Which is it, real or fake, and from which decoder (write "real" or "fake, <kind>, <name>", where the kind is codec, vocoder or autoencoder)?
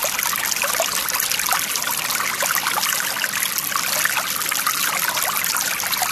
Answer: real